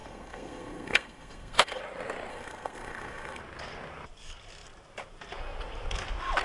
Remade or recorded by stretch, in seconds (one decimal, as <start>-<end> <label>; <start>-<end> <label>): 0.0-1.8 remade; 1.8-2.3 recorded; 2.3-3.4 remade; 3.4-6.4 recorded